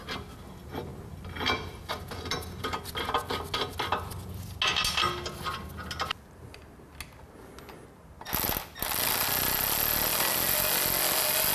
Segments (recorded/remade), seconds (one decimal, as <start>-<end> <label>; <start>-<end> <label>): 0.0-11.5 recorded